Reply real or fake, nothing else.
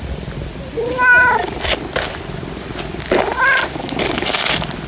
real